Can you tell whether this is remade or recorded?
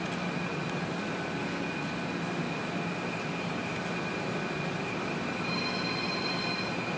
recorded